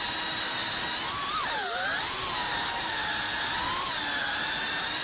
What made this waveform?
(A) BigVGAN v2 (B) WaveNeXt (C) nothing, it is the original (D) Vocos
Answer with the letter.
C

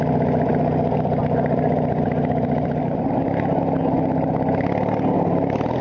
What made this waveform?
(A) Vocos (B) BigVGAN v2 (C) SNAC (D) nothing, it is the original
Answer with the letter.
D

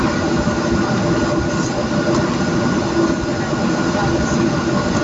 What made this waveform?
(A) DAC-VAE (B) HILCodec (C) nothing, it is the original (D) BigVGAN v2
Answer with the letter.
C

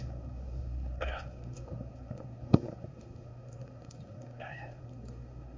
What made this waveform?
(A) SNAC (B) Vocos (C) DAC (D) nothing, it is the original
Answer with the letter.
A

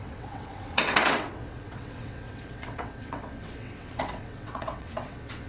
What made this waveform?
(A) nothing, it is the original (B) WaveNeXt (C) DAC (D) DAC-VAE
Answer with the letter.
B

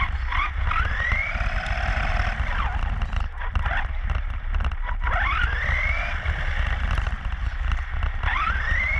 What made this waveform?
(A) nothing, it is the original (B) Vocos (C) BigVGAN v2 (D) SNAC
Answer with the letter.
A